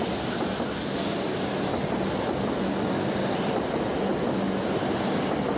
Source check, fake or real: real